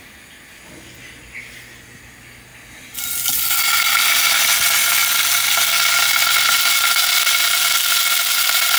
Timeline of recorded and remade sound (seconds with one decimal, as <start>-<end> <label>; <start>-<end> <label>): 0.0-8.8 recorded